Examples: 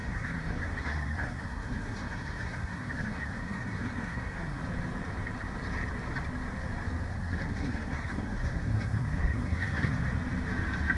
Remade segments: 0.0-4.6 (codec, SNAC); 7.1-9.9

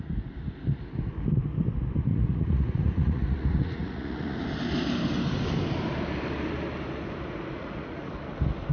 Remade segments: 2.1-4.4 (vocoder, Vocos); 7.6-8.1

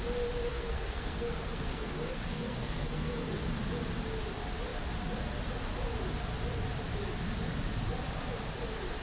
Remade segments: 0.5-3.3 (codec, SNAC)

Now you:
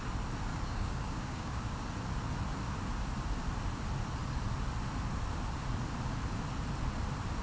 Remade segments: 0.5-1.8 (codec, DAC)